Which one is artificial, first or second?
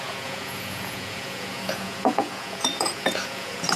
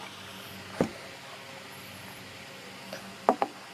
first